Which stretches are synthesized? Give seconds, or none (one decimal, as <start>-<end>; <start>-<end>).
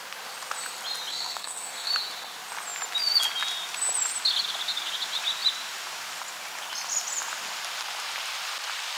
1.1-1.9